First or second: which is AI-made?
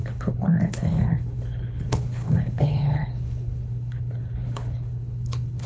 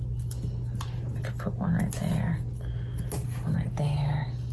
first